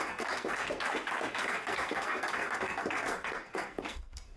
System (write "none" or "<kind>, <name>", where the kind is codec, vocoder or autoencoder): codec, SNAC